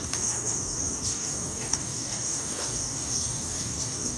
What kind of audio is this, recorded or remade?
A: remade